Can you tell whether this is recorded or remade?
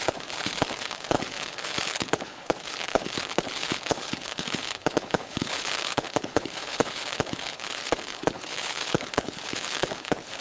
remade